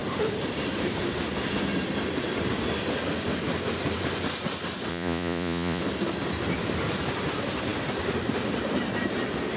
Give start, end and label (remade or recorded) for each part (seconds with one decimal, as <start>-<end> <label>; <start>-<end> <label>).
0.0-4.9 recorded; 4.9-5.8 remade; 5.8-9.6 recorded